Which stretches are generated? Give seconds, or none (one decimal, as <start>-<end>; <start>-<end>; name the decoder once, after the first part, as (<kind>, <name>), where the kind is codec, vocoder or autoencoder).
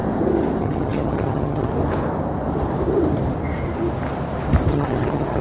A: 0.6-1.7 (vocoder, HiFi-GAN); 4.7-5.4